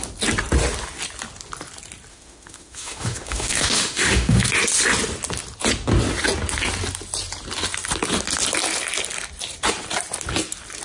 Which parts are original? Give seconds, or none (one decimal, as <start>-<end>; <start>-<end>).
0.0-2.1; 4.5-10.8